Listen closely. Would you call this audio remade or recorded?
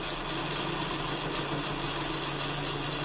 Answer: recorded